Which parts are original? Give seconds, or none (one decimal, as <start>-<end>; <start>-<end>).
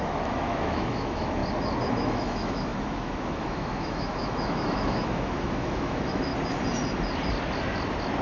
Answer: 1.4-1.9; 6.3-8.2